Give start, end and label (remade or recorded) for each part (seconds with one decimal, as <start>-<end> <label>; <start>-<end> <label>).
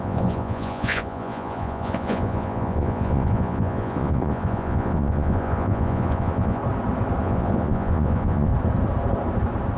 0.0-6.6 remade; 6.6-7.2 recorded; 7.2-8.5 remade; 8.5-9.8 recorded